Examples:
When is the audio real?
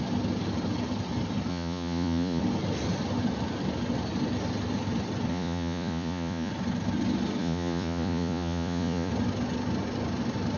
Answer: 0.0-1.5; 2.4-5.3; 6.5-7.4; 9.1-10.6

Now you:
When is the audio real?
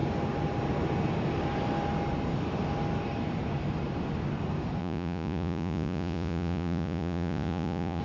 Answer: 0.0-4.8